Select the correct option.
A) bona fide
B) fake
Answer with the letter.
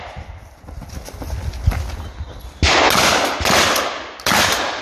A